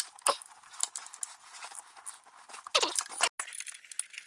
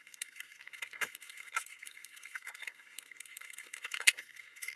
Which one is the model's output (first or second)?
second